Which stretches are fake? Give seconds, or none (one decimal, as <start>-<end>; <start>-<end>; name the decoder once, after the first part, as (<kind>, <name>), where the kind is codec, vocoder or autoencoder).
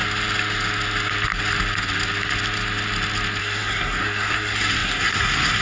3.4-5.6 (codec, SNAC)